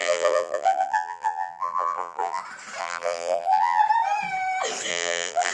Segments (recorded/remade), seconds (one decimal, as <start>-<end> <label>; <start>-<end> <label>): 0.0-2.4 remade; 2.4-2.8 recorded; 2.8-3.8 remade; 3.8-4.9 recorded; 4.9-5.5 remade